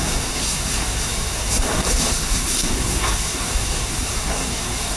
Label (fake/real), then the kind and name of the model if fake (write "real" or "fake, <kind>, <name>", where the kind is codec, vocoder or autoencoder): fake, codec, SNAC